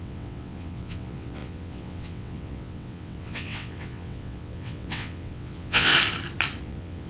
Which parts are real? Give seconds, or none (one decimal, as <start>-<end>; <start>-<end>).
5.9-6.6